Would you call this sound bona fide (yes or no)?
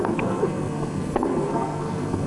no